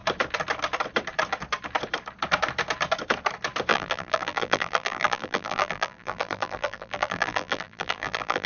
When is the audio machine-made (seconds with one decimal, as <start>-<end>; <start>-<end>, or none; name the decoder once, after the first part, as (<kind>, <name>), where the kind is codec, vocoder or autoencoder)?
3.7-8.5 (vocoder, BigVGAN v2)